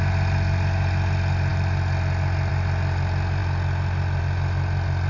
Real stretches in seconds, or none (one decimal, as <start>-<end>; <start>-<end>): 0.0-5.1